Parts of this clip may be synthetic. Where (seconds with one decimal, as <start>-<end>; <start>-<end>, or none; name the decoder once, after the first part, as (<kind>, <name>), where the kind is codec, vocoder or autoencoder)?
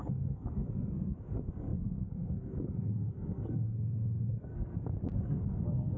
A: 0.0-4.7 (codec, SNAC); 5.2-6.0